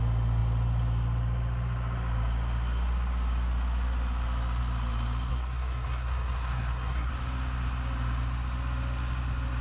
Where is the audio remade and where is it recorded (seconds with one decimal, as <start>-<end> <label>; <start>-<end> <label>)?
0.0-5.3 recorded; 5.3-7.1 remade; 7.1-9.6 recorded